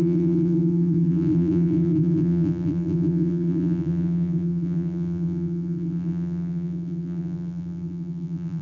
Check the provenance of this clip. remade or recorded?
remade